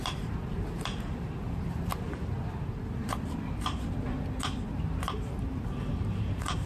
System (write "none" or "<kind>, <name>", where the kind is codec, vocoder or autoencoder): vocoder, BigVGAN v2